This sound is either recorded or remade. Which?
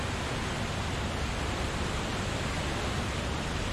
recorded